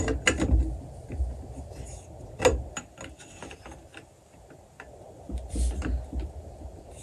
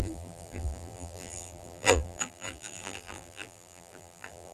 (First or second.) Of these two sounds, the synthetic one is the second